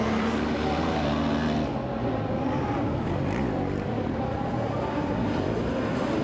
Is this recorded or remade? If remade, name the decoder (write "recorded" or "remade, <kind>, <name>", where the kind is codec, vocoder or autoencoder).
recorded